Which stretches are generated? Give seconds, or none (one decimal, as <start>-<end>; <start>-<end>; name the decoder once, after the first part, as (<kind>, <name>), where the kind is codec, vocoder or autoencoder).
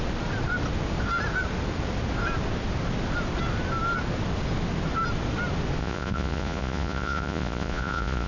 5.8-8.3 (vocoder, Vocos)